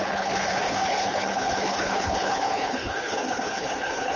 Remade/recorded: remade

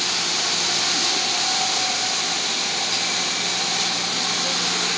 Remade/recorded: recorded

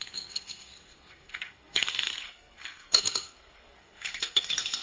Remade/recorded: remade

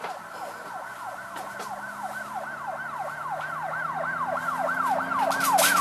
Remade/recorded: recorded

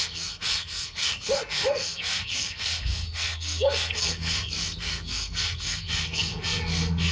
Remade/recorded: remade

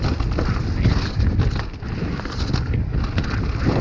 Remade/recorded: recorded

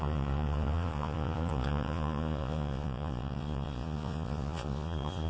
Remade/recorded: remade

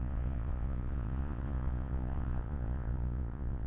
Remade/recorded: remade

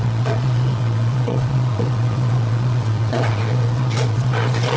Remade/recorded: remade